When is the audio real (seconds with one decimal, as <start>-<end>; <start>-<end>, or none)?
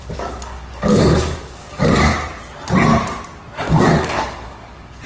2.1-3.6